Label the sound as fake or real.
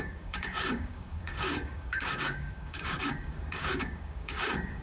fake